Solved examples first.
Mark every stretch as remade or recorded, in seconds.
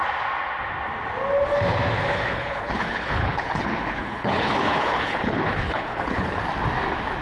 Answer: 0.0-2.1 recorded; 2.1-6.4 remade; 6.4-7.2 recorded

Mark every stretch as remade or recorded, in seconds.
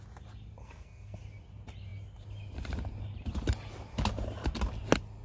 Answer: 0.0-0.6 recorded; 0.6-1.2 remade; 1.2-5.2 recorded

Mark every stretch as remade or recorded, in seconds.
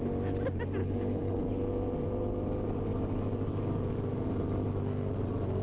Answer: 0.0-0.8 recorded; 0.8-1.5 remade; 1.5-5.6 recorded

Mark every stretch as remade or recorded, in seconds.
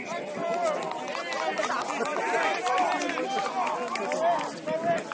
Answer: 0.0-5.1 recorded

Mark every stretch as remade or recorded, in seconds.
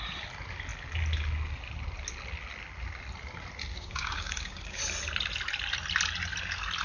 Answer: 0.0-3.7 recorded; 3.7-4.8 remade; 4.8-6.8 recorded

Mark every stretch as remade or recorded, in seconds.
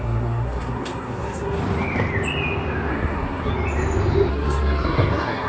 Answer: 0.0-1.6 remade; 1.6-2.9 recorded; 2.9-3.5 remade; 3.5-4.3 recorded; 4.3-5.5 remade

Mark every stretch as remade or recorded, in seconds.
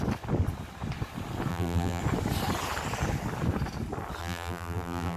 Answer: 0.0-1.5 recorded; 1.5-2.0 remade; 2.0-4.2 recorded; 4.2-5.2 remade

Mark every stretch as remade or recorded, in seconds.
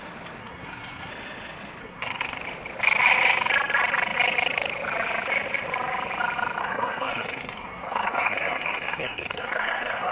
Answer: 0.0-0.4 recorded; 0.4-1.1 remade; 1.1-1.8 recorded; 1.8-2.4 remade; 2.4-6.6 recorded; 6.6-10.1 remade